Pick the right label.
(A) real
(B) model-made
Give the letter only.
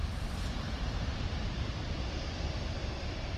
B